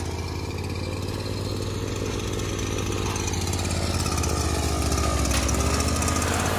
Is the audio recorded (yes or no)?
yes